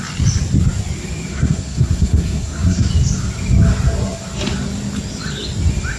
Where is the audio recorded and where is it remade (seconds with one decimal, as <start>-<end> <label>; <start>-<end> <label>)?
0.0-1.3 recorded; 1.3-2.9 remade; 2.9-6.0 recorded